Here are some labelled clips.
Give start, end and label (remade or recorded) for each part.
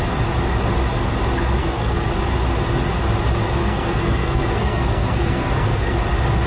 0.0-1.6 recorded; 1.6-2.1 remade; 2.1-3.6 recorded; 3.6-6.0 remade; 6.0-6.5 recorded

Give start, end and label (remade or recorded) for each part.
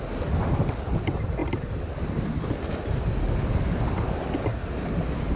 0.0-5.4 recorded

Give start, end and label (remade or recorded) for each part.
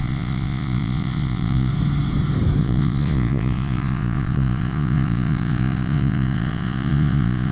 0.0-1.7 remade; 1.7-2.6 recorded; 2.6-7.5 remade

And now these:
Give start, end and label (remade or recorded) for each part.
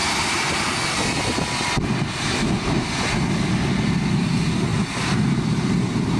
0.0-0.5 remade; 0.5-6.2 recorded